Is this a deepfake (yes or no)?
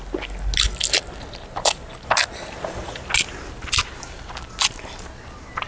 no